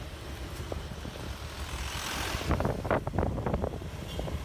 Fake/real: fake